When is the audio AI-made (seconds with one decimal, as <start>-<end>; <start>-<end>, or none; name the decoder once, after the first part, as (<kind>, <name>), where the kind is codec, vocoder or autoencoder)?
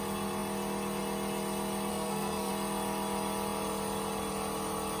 1.9-2.5 (codec, SNAC)